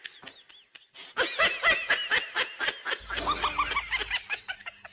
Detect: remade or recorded recorded